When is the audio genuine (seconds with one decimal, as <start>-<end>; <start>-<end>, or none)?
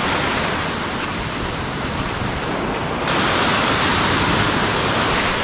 0.0-5.4